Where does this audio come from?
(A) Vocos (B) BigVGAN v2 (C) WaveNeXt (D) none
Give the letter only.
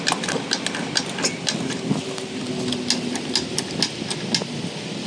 D